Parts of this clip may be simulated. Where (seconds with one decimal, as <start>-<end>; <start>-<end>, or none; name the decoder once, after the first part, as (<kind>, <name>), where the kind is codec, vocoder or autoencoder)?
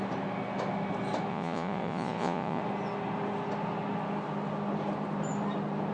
1.3-2.6 (vocoder, Vocos)